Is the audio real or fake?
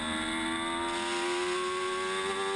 real